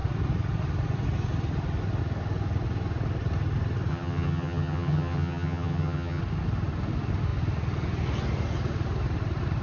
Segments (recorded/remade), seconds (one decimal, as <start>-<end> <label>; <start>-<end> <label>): 0.0-3.9 recorded; 3.9-6.2 remade; 6.2-9.6 recorded